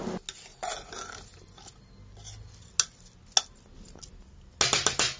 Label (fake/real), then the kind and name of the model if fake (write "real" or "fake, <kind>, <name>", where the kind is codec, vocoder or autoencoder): real